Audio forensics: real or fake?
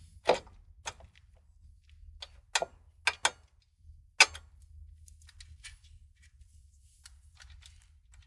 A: real